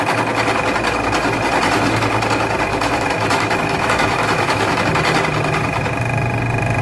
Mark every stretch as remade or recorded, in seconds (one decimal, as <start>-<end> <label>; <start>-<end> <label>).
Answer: 0.0-2.7 recorded; 2.7-4.8 remade; 4.8-6.8 recorded